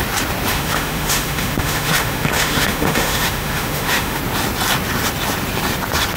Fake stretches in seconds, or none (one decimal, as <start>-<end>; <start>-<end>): 0.5-4.2